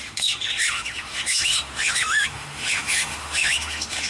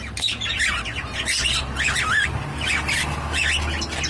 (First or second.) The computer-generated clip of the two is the first